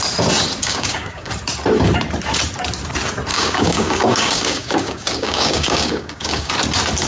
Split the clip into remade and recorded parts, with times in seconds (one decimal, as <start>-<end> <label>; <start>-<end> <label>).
0.0-0.6 recorded; 0.6-1.3 remade; 1.3-3.3 recorded; 3.3-6.5 remade; 6.5-7.1 recorded